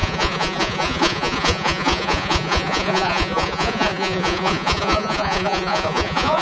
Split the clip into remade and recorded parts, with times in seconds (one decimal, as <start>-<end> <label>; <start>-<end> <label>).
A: 0.0-6.4 remade